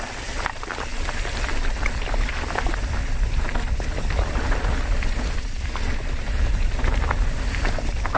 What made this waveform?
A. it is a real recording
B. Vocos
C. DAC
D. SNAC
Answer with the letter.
A